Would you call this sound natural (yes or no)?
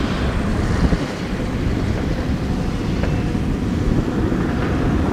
no